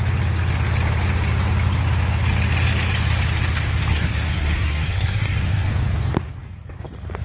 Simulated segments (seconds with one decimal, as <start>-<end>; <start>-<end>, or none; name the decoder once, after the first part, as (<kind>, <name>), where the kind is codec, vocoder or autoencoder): 3.9-5.7 (codec, SNAC)